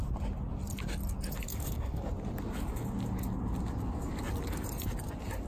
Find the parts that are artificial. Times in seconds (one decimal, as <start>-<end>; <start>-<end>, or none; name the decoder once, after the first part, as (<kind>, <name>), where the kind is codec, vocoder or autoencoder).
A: 1.5-2.1 (codec, DAC)